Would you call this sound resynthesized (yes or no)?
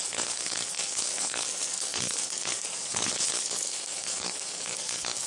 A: yes